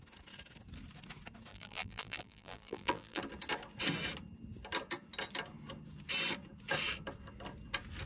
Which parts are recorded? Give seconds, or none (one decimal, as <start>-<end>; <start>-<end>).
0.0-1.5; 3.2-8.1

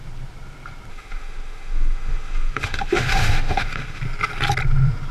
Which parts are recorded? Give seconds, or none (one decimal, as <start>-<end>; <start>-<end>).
0.0-0.9; 4.0-5.1

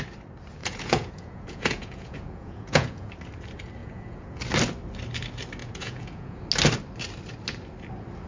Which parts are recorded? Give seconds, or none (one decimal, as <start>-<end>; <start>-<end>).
0.0-0.6; 3.1-3.8; 4.4-5.6; 6.4-8.3

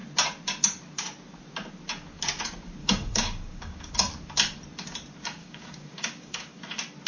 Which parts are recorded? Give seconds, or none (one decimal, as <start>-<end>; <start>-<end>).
0.0-2.8; 3.9-5.4; 6.6-7.1

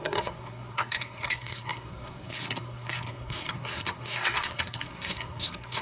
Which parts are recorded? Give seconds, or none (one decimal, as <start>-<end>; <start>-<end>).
none

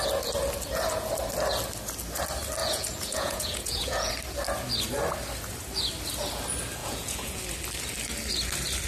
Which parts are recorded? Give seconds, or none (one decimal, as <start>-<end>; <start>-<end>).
0.0-2.6; 4.1-6.8; 7.4-8.9

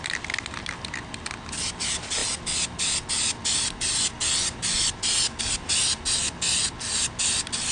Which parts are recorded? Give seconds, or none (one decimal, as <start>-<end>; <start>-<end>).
0.0-7.7

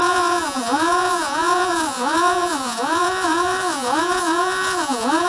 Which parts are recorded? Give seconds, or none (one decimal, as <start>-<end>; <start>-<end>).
none